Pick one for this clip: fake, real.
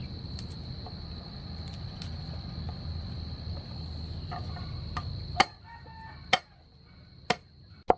real